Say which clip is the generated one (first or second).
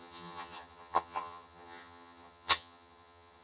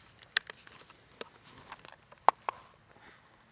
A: first